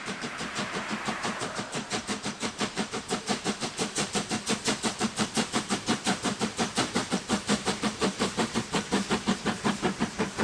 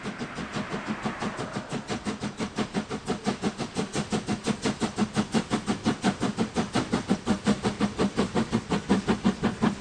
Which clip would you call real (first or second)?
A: second